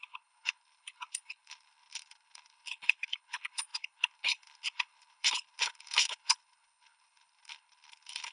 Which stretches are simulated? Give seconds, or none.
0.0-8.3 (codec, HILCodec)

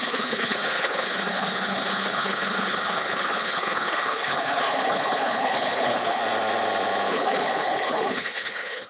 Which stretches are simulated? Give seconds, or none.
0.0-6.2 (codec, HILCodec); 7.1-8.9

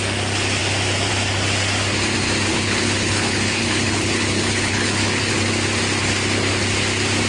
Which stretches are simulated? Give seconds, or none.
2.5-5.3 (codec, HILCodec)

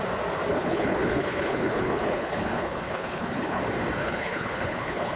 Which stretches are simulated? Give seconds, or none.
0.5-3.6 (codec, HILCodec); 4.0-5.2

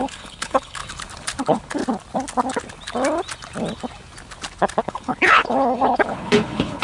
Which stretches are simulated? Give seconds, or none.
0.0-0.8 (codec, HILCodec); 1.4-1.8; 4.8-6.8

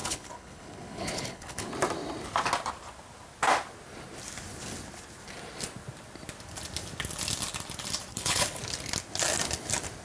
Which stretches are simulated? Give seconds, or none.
0.0-1.7 (codec, HILCodec); 8.1-8.6

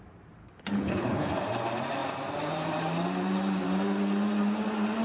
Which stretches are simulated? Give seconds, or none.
0.4-1.3 (codec, HILCodec)